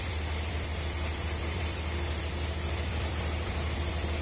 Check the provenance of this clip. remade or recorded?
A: remade